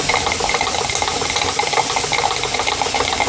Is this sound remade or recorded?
recorded